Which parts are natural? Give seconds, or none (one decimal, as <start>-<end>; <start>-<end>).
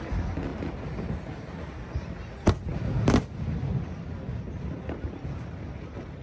0.0-6.2